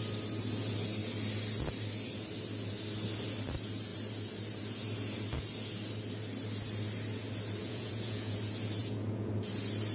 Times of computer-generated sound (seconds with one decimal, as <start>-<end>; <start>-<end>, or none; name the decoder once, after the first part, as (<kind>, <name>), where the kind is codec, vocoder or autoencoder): 7.6-8.4 (vocoder, Vocos); 8.8-9.3

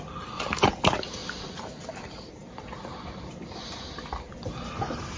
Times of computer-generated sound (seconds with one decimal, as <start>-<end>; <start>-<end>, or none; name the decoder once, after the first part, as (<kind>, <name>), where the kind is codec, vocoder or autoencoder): 1.2-4.3 (vocoder, BigVGAN v2)

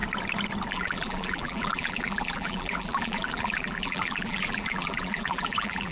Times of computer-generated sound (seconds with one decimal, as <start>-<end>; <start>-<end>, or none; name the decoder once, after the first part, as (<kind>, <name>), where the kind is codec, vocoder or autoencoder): 0.7-5.9 (vocoder, BigVGAN v2)

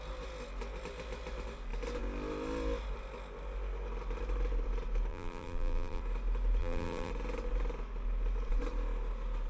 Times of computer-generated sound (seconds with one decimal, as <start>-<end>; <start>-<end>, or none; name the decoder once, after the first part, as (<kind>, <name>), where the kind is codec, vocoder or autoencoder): 5.1-6.0 (vocoder, BigVGAN v2); 6.6-7.1

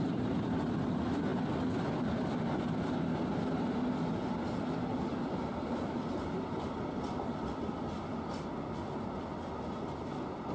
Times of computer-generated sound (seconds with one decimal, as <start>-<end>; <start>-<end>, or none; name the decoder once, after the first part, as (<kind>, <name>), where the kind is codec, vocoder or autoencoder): none

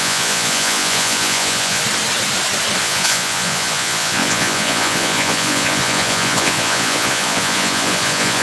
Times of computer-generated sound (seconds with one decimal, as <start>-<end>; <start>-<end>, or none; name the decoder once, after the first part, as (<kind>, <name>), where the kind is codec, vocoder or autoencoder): 0.0-1.8 (vocoder, Vocos); 2.8-8.4